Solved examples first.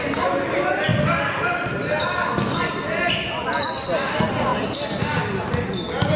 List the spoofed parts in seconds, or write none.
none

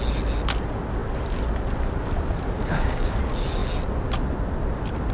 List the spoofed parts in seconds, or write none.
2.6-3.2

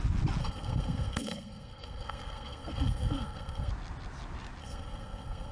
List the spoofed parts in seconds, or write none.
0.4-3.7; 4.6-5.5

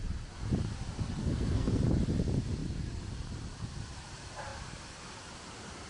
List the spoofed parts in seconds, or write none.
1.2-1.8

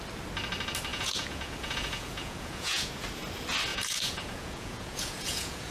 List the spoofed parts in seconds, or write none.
0.9-2.9; 3.7-5.7

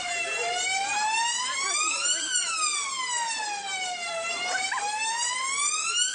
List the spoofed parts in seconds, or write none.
none

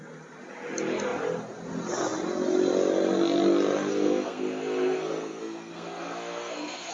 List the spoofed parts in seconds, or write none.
3.9-6.9

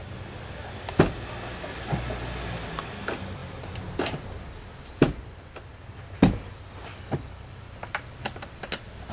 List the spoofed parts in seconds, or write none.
6.9-7.5